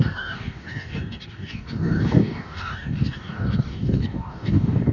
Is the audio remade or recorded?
remade